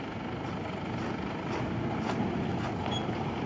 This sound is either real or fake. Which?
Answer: real